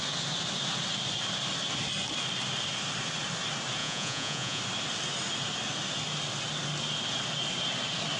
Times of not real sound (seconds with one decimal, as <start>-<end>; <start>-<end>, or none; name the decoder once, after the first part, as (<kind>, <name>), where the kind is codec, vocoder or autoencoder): 3.8-4.6 (vocoder, Vocos)